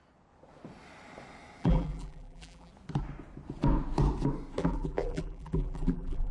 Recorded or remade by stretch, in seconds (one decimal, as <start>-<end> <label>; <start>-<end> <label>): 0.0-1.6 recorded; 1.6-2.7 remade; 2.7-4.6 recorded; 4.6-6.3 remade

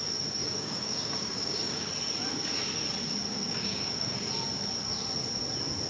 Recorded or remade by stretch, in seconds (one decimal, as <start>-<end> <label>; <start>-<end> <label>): 0.0-0.4 recorded; 0.4-1.9 remade; 1.9-3.3 recorded; 3.3-4.3 remade; 4.3-5.9 recorded

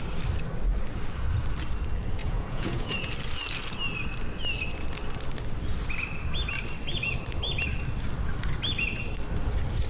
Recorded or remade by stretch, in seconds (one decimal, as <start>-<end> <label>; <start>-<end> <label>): 0.0-2.2 recorded; 2.2-3.1 remade; 3.1-9.9 recorded